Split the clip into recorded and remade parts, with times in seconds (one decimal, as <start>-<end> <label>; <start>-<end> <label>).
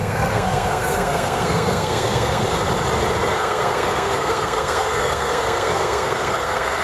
0.0-2.4 remade; 2.4-3.3 recorded; 3.3-6.8 remade